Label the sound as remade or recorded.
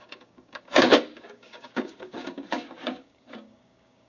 remade